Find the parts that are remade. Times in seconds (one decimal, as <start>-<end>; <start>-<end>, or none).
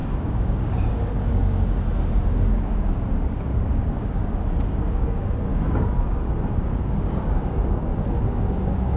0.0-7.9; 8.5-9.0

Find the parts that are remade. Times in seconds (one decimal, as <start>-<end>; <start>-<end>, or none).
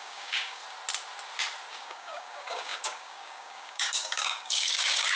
0.0-0.6; 1.7-5.2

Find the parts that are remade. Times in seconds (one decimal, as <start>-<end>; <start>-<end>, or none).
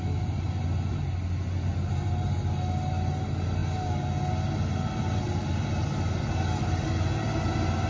none